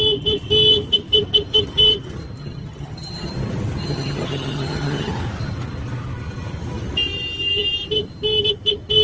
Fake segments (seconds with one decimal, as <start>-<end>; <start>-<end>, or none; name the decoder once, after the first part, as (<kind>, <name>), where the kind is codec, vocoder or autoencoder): 2.4-3.3 (vocoder, HiFi-GAN); 3.8-5.1